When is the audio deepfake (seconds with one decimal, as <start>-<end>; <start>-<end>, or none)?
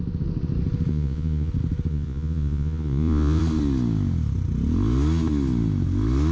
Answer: 0.9-1.5; 1.9-3.4